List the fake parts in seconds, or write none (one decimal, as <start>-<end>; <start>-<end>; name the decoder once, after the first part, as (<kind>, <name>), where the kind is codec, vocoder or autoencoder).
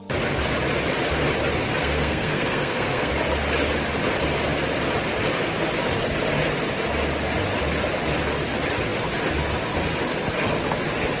1.8-3.1 (codec, SNAC)